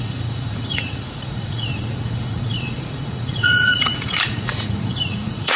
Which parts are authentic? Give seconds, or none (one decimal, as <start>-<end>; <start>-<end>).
none